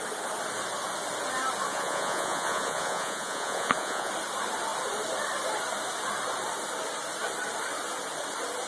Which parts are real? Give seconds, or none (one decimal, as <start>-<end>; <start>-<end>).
0.0-1.7; 4.1-8.7